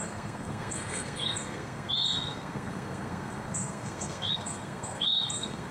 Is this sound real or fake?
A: fake